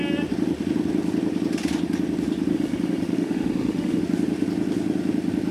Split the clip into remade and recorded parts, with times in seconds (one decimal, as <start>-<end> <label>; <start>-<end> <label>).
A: 0.0-2.5 recorded; 2.5-4.0 remade; 4.0-5.5 recorded